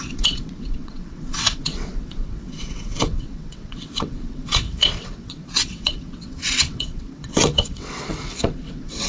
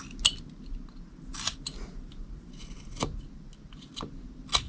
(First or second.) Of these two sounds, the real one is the second